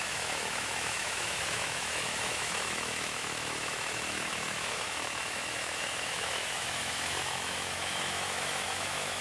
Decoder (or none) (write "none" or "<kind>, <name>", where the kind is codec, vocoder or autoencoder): autoencoder, DAC-VAE